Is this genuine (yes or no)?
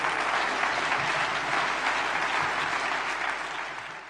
yes